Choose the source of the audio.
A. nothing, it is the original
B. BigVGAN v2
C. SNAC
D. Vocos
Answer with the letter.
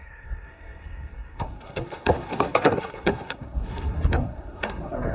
C